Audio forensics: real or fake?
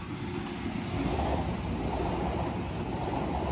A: real